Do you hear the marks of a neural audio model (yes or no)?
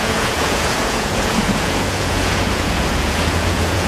yes